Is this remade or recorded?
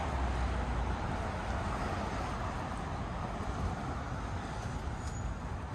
recorded